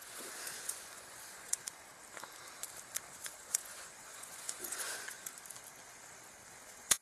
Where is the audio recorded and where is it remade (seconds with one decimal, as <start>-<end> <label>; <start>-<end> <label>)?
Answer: 0.0-1.9 remade; 1.9-3.1 recorded; 3.1-5.3 remade; 5.3-6.5 recorded; 6.5-7.0 remade